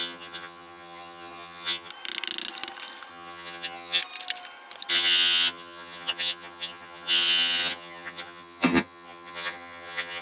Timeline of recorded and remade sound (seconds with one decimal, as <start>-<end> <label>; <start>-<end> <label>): 0.0-1.9 remade; 1.9-3.1 recorded; 3.1-4.0 remade; 4.0-4.9 recorded; 4.9-10.2 remade